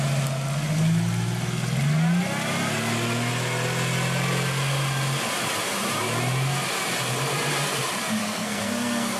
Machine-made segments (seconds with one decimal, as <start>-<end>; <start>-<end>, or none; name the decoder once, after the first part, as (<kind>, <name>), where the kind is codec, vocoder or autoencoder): 8.2-9.2 (codec, SNAC)